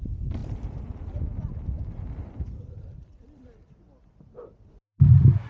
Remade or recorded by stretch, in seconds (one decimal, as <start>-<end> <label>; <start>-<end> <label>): 0.0-0.4 recorded; 0.4-3.7 remade; 3.7-5.5 recorded